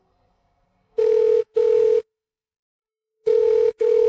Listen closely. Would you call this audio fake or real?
fake